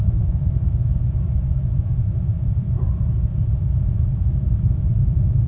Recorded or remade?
remade